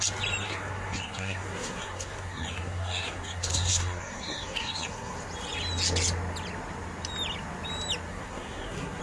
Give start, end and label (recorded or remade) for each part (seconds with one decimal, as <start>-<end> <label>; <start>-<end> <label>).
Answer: 0.0-0.4 recorded; 0.4-5.2 remade; 5.2-8.1 recorded; 8.1-9.0 remade